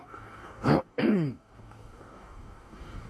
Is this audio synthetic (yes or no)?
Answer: yes